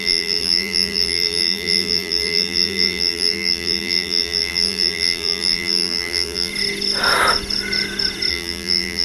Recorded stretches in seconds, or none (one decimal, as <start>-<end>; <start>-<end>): 6.5-8.3